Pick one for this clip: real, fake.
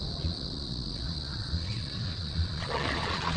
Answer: fake